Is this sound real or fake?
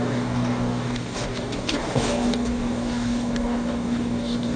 fake